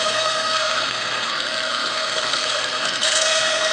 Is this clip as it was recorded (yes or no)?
no